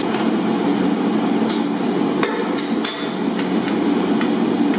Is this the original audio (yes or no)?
yes